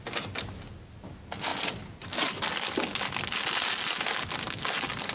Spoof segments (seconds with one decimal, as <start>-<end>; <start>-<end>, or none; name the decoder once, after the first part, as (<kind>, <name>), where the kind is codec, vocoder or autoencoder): none

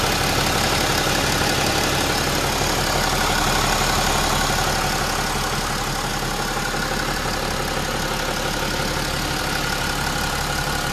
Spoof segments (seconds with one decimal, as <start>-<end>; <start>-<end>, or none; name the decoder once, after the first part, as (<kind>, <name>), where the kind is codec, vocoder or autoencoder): none

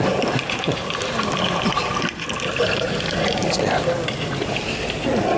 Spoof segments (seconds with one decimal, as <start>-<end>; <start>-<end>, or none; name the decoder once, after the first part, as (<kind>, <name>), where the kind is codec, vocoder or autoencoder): none

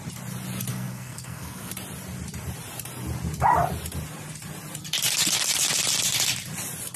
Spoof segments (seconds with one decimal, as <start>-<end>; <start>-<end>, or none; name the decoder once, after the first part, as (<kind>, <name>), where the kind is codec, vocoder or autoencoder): 0.7-1.7 (codec, SNAC)

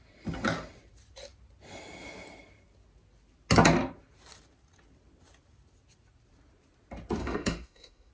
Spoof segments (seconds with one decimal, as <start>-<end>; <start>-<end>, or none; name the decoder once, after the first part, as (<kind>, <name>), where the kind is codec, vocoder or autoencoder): 7.2-8.1 (autoencoder, DAC-VAE)